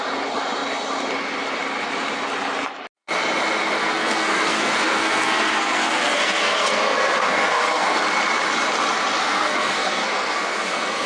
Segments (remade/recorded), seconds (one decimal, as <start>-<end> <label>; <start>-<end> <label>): 0.0-3.8 recorded; 3.8-8.0 remade; 8.0-9.2 recorded; 9.2-11.1 remade